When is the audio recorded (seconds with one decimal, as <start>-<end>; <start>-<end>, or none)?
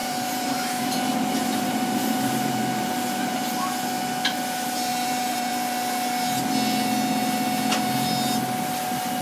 2.6-4.9; 5.5-9.2